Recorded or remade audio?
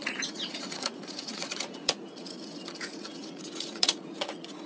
remade